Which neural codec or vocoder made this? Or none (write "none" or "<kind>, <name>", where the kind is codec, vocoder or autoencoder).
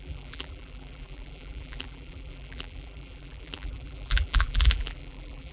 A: vocoder, BigVGAN v2